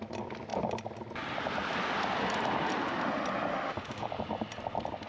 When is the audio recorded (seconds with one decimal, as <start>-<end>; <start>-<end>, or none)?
0.0-3.5; 4.1-5.1